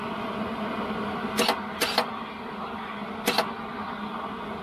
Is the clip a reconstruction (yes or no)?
no